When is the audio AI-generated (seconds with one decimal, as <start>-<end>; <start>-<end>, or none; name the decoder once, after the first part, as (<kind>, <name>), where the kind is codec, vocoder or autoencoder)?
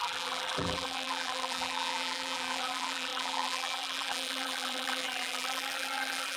0.0-6.4 (vocoder, BigVGAN v2)